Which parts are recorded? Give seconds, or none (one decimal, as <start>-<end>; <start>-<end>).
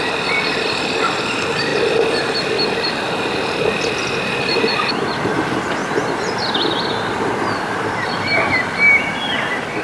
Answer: 1.7-4.4